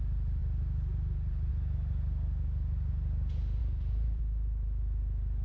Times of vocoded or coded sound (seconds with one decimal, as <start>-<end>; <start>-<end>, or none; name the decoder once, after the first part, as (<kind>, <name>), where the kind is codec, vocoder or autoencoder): 0.4-1.5 (vocoder, BigVGAN v2); 3.6-4.2